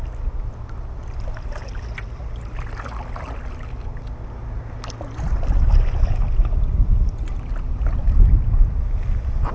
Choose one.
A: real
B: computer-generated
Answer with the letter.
A